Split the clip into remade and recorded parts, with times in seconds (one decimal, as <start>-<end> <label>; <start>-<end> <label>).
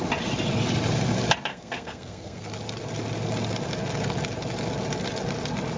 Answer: 0.0-1.5 recorded; 1.5-2.5 remade; 2.5-5.8 recorded